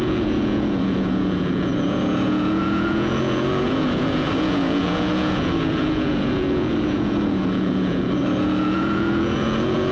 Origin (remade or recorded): remade